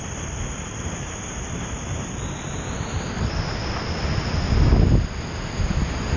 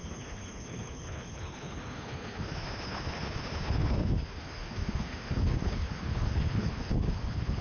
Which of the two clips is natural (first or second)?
first